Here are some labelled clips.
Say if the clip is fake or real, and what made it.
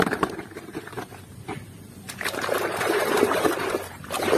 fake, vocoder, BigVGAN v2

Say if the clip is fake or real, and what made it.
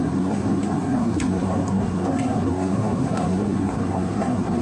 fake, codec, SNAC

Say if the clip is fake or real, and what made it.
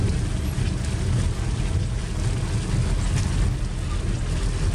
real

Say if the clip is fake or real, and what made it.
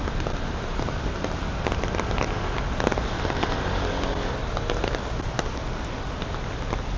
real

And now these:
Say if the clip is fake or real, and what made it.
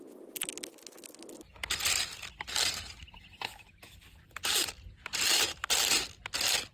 real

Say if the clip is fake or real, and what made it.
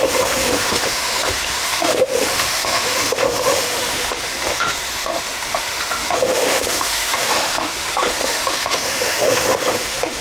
fake, autoencoder, DAC-VAE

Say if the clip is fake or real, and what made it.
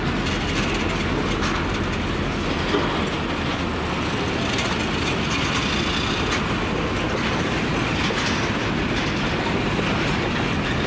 real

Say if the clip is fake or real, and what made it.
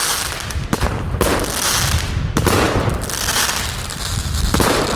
real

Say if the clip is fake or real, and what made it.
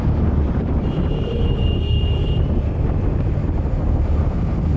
fake, vocoder, BigVGAN v2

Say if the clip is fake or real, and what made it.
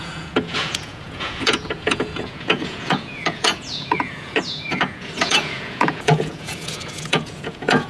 fake, vocoder, Vocos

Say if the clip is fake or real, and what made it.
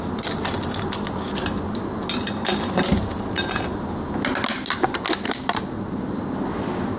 real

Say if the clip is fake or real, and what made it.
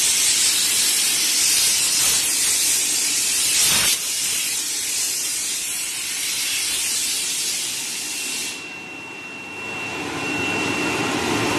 real